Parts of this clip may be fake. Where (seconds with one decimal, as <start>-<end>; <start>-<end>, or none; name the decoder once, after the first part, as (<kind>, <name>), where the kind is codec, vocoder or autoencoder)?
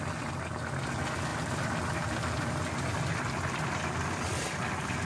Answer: none